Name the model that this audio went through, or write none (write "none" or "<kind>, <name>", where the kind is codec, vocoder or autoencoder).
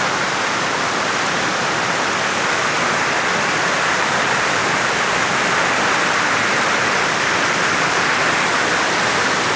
none